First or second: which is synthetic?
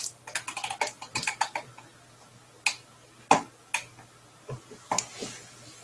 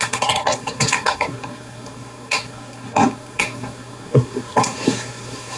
second